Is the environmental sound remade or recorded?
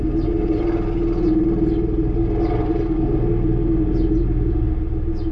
recorded